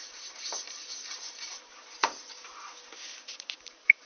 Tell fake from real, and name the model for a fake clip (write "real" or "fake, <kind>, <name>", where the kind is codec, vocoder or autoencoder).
fake, vocoder, BigVGAN v2